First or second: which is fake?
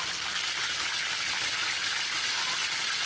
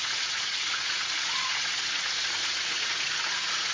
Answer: second